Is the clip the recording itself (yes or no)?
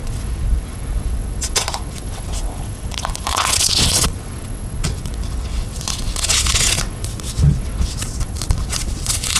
no